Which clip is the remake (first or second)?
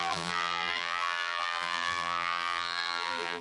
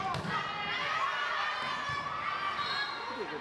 first